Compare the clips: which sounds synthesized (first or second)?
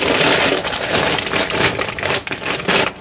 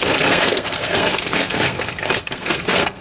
second